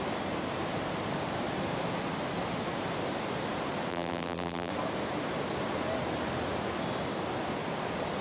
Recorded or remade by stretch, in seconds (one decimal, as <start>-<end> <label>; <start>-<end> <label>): 0.0-3.9 recorded; 3.9-4.7 remade; 4.7-8.2 recorded